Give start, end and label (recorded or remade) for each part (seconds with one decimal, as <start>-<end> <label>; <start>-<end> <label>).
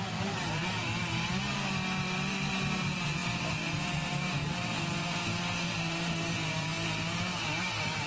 0.0-0.6 remade; 0.6-2.5 recorded; 2.5-8.1 remade